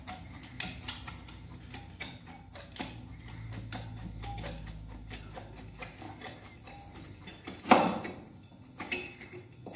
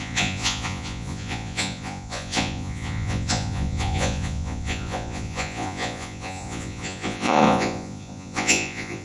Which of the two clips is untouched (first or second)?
first